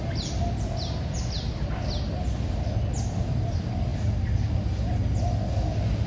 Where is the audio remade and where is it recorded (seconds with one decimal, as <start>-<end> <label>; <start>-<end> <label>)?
0.0-6.1 recorded